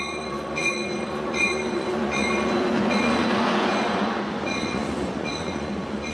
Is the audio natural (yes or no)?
no